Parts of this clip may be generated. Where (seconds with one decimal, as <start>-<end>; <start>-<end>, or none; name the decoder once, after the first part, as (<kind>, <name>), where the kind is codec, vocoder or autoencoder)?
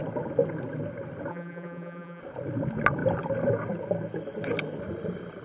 1.3-2.2 (vocoder, BigVGAN v2)